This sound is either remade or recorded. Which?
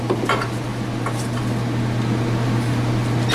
recorded